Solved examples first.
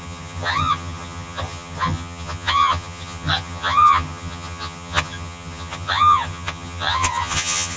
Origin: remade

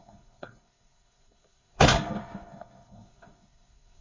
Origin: remade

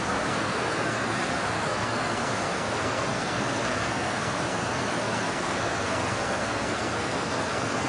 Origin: remade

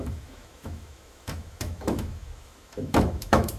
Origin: remade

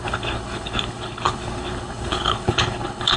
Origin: remade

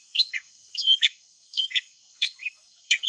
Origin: remade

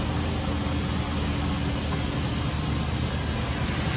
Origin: recorded